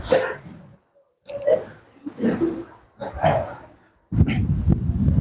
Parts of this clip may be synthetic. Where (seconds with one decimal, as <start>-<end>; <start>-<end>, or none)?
none